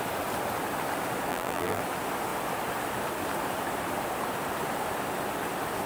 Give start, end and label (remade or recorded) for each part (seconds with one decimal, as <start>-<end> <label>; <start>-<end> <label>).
0.0-1.3 recorded; 1.3-1.8 remade; 1.8-5.9 recorded